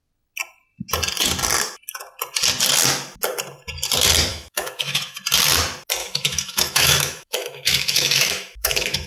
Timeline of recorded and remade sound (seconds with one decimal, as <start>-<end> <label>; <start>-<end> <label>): 0.0-4.3 recorded; 4.3-5.2 remade; 5.2-6.0 recorded; 6.0-9.1 remade